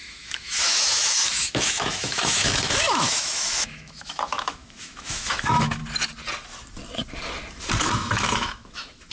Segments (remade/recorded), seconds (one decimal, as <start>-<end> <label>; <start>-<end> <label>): 0.0-5.8 remade; 5.8-7.8 recorded; 7.8-9.1 remade